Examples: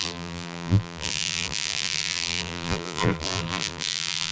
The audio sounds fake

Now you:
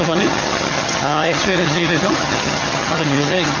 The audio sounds fake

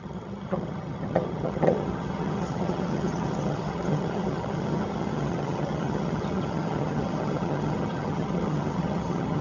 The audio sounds fake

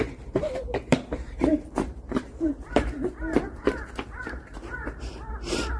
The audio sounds fake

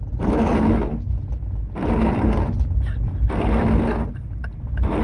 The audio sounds real